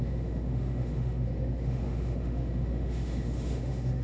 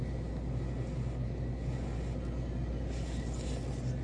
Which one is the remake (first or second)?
first